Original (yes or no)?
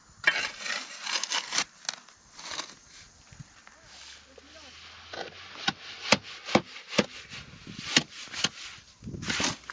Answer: yes